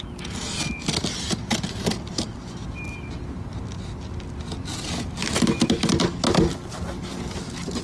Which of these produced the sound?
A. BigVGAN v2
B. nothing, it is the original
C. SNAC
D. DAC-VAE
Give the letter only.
B